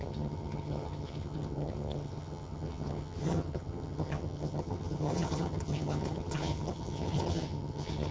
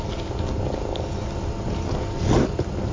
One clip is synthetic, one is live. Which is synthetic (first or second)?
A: first